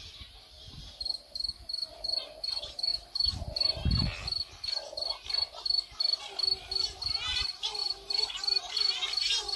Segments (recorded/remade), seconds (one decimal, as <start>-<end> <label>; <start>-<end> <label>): 0.0-7.8 recorded; 7.8-8.6 remade; 8.6-9.6 recorded